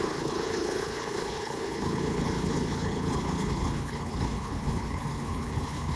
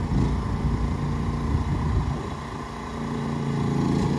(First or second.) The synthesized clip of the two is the first